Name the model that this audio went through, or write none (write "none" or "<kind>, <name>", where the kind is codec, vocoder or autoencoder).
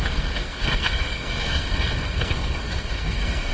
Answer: codec, SNAC